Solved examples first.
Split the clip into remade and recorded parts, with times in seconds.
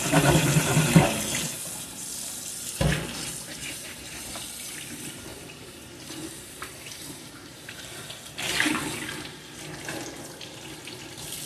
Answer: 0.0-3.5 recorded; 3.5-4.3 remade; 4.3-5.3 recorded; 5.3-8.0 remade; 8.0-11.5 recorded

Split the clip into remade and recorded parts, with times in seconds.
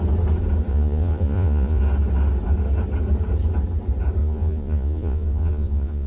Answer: 0.0-0.7 recorded; 0.7-1.8 remade; 1.8-4.2 recorded; 4.2-6.1 remade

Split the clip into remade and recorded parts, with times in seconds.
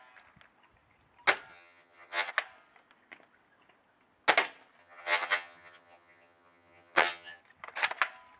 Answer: 0.0-1.5 recorded; 1.5-2.3 remade; 2.3-4.8 recorded; 4.8-7.4 remade; 7.4-8.4 recorded